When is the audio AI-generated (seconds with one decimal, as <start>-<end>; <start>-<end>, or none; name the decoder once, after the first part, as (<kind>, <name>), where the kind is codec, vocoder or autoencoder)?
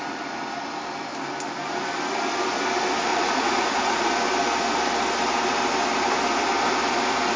3.1-4.1 (vocoder, Vocos)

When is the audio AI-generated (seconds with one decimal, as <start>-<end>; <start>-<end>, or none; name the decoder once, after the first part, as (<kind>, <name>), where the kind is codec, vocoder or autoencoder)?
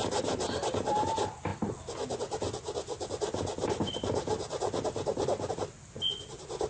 none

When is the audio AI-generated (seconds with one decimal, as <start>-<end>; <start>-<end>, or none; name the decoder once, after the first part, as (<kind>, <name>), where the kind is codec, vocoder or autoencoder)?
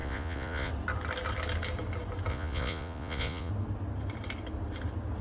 0.0-0.7 (vocoder, Vocos); 2.3-3.5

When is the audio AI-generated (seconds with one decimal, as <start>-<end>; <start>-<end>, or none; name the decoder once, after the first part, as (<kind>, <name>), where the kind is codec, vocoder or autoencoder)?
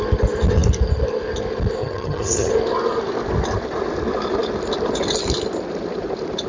1.8-2.5 (vocoder, HiFi-GAN)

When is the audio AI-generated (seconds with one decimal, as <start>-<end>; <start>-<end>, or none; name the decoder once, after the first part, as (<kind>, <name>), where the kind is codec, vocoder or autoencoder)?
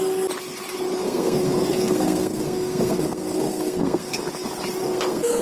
1.0-4.2 (codec, SNAC); 4.8-5.4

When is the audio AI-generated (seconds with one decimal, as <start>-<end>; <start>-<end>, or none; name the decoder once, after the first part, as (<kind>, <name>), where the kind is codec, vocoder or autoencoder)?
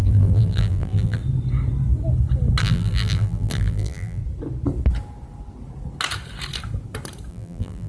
0.0-1.2 (vocoder, BigVGAN v2); 2.6-4.2; 7.3-7.9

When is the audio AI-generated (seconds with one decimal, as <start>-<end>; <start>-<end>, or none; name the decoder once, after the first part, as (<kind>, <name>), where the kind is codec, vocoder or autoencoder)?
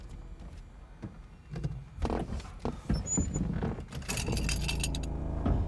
none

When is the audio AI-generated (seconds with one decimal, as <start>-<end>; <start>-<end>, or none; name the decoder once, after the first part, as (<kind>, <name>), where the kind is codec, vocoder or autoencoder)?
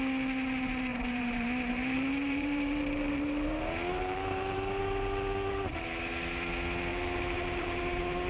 0.9-4.8 (vocoder, BigVGAN v2); 6.9-7.8